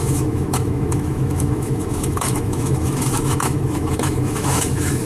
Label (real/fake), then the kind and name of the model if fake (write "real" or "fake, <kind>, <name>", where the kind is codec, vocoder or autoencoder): fake, autoencoder, DAC-VAE